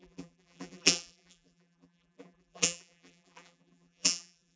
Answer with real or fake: fake